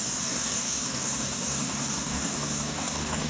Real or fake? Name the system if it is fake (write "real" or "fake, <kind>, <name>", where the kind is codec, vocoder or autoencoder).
fake, codec, DAC